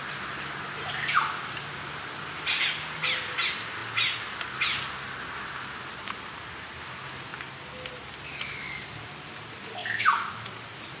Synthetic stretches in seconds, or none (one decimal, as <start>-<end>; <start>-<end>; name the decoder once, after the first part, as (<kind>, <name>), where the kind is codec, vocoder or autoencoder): 9.8-10.5 (autoencoder, DAC-VAE)